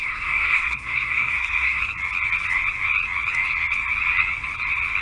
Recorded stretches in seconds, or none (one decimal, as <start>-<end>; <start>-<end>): 1.8-5.0